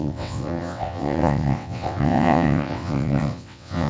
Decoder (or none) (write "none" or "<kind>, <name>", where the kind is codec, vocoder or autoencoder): vocoder, WaveNeXt